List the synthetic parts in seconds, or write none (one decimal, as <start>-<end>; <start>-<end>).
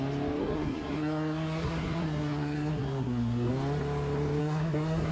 0.4-3.5; 4.4-5.1